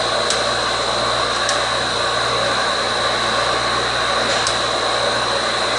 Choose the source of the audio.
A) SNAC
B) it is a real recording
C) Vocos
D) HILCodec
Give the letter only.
B